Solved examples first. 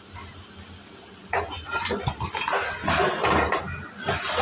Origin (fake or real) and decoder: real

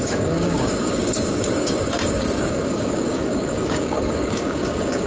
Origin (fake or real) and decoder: fake, codec, DAC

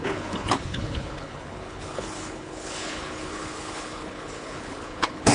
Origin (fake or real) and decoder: fake, codec, HILCodec